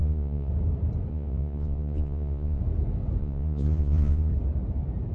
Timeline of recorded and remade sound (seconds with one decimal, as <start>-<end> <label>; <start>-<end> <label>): 0.0-0.5 remade; 0.5-1.1 recorded; 1.1-2.6 remade; 2.6-3.2 recorded; 3.2-4.3 remade; 4.3-5.1 recorded